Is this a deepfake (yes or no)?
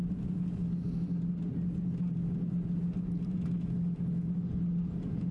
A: no